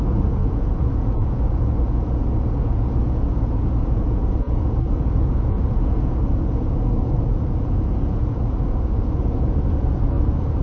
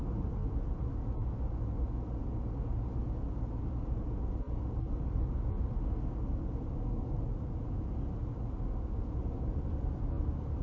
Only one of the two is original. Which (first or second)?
second